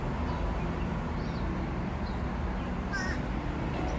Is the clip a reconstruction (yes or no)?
no